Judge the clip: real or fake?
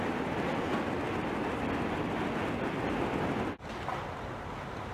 real